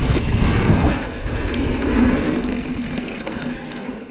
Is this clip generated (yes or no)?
yes